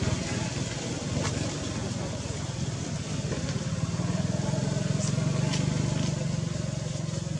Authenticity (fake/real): real